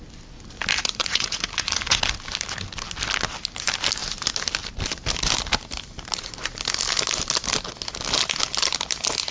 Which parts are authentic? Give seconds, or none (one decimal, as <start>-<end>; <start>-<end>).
0.0-0.7; 2.0-9.3